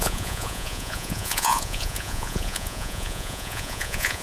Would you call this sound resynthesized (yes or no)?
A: yes